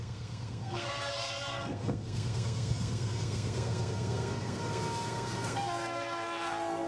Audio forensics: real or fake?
fake